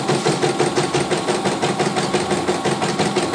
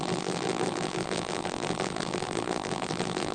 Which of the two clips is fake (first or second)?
second